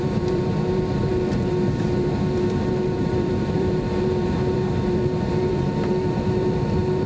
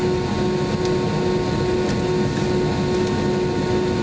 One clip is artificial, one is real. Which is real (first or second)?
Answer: second